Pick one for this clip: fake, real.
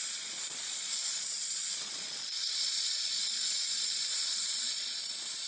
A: fake